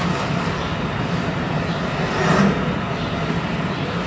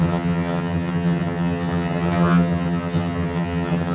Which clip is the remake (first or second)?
second